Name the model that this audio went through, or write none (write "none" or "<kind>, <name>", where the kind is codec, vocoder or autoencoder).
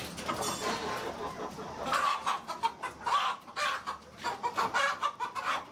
none